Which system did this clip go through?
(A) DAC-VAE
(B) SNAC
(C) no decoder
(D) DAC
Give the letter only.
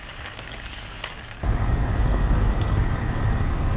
D